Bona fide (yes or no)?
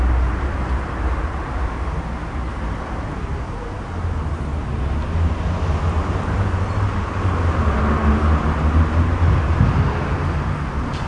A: yes